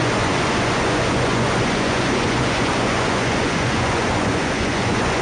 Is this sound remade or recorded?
remade